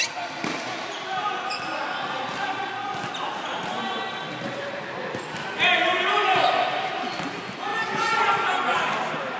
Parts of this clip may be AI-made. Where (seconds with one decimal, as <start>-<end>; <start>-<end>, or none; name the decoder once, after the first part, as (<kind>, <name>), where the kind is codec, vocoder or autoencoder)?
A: none

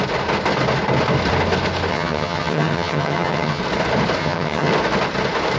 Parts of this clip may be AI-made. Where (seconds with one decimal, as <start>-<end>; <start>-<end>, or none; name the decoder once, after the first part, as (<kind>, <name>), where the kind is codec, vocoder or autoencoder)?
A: 1.9-3.6 (vocoder, HiFi-GAN); 4.2-4.7

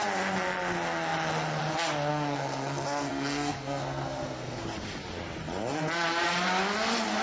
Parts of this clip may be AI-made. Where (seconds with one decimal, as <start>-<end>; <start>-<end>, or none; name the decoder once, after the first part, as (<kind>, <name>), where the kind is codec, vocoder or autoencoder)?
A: 2.1-4.6 (codec, SNAC)

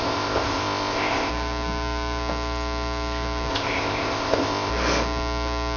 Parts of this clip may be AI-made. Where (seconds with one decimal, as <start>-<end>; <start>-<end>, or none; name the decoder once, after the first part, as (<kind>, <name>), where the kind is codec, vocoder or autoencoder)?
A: 0.0-1.3 (codec, ZipCodec); 3.5-4.7

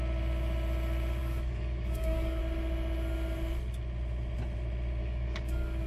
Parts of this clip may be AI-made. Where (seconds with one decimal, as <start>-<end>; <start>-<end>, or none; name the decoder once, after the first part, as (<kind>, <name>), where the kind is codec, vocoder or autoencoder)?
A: 1.2-2.4 (codec, DAC); 5.0-5.9